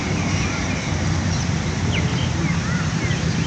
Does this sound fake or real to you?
real